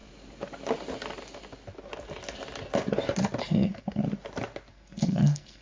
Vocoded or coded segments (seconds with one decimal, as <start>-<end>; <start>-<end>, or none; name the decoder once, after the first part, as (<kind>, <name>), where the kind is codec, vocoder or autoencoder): 3.4-4.0 (codec, SNAC); 4.7-5.6